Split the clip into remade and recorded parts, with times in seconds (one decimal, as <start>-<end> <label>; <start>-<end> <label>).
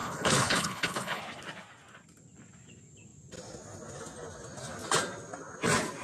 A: 0.0-1.2 remade; 1.2-6.0 recorded